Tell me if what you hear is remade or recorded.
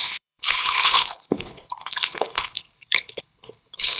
remade